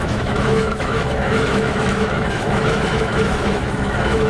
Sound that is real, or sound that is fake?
fake